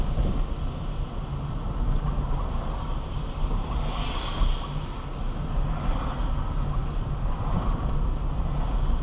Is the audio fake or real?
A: real